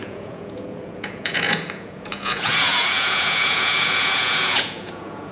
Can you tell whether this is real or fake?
fake